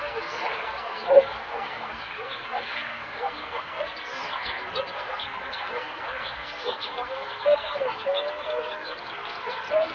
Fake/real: fake